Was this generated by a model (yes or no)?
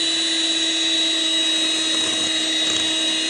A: no